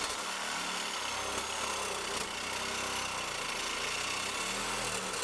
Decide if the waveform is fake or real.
real